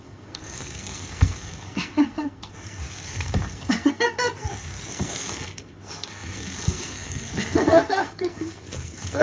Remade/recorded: remade